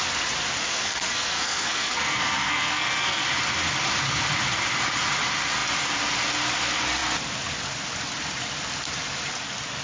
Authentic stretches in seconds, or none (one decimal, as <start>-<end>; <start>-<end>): 0.0-0.6; 3.2-9.8